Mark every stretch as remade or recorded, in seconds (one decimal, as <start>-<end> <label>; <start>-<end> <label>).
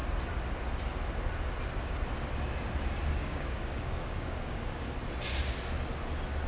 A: 0.0-3.2 recorded; 3.2-4.9 remade; 4.9-6.5 recorded